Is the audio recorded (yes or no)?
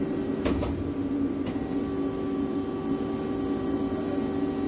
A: yes